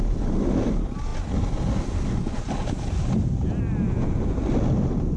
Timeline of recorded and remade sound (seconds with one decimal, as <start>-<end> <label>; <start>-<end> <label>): 0.0-5.2 recorded